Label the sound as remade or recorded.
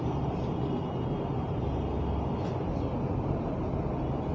recorded